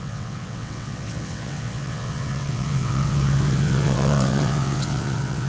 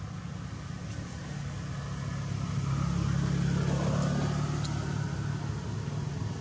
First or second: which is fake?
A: first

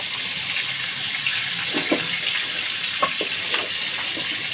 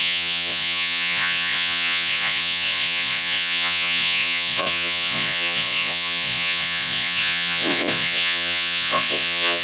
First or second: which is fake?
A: second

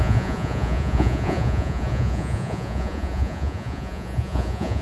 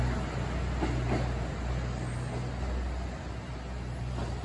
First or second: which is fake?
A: first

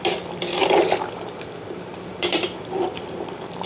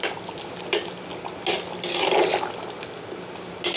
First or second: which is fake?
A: first